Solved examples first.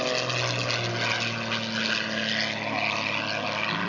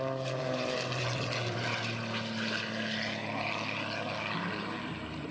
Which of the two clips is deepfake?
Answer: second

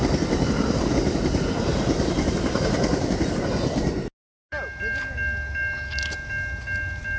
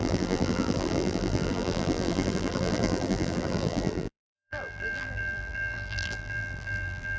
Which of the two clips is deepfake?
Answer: second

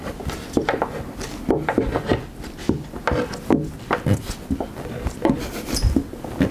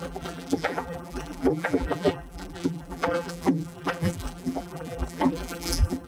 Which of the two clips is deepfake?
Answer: second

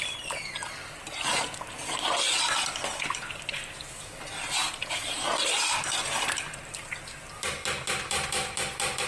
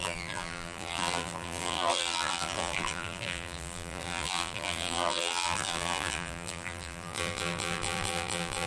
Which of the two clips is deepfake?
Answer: second